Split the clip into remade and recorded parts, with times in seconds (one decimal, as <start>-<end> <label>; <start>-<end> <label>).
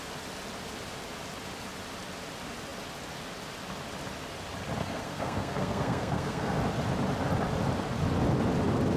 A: 0.0-4.8 recorded; 4.8-6.6 remade; 6.6-9.0 recorded